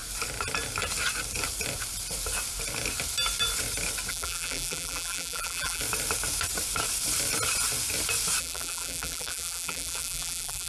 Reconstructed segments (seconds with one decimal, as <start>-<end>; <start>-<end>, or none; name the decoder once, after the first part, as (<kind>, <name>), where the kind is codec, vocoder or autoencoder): 4.1-5.8 (vocoder, BigVGAN v2); 8.4-10.7